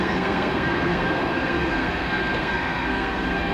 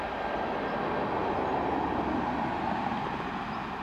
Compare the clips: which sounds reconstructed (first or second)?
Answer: first